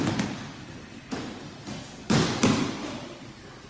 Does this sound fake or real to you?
real